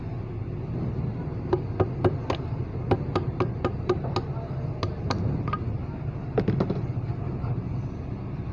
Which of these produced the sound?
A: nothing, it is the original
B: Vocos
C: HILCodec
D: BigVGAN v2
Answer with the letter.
A